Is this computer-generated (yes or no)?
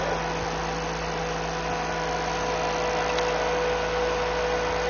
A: no